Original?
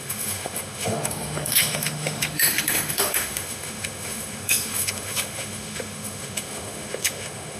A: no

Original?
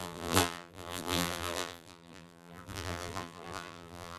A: no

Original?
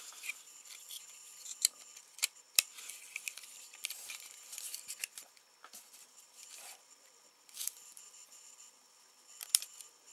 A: no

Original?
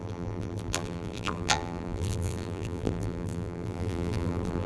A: no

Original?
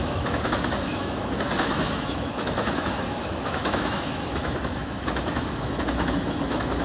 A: no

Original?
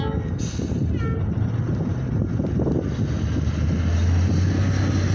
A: yes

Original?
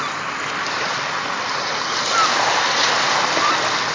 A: yes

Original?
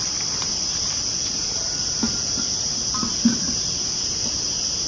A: yes